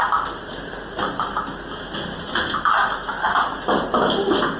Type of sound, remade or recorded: recorded